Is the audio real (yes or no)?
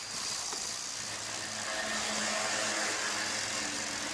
yes